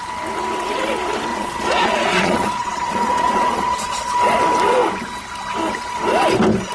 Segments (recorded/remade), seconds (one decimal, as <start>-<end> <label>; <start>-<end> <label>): 0.0-1.3 recorded; 1.3-4.1 remade; 4.1-6.7 recorded

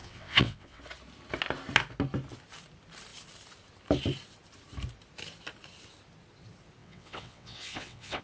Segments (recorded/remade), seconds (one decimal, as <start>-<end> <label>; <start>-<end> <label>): 0.0-0.8 remade; 0.8-6.8 recorded; 6.8-8.2 remade

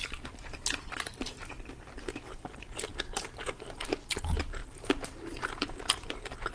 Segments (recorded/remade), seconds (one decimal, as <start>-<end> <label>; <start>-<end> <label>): 0.0-0.9 remade; 0.9-4.6 recorded; 4.6-5.8 remade; 5.8-6.5 recorded

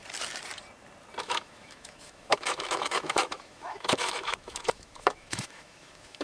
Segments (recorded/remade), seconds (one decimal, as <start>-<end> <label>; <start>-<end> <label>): 0.0-1.2 recorded; 1.2-6.2 remade

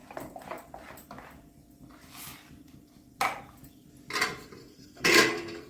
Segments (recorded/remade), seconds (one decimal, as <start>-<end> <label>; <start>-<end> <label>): 0.0-4.6 recorded; 4.6-5.7 remade

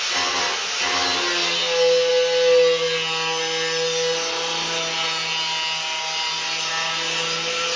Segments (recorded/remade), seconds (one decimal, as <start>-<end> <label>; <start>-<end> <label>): 0.0-7.8 recorded

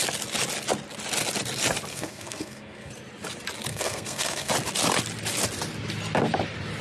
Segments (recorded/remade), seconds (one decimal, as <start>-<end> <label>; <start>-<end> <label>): 0.0-1.9 recorded; 1.9-2.9 remade; 2.9-3.7 recorded; 3.7-4.5 remade; 4.5-6.8 recorded